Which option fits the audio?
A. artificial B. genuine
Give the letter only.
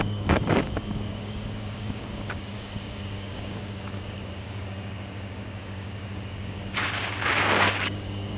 A